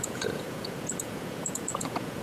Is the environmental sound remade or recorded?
remade